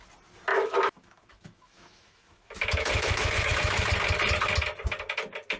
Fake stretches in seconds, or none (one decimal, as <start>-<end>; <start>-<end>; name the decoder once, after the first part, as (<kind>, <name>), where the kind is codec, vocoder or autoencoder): 0.5-3.9 (autoencoder, DAC-VAE)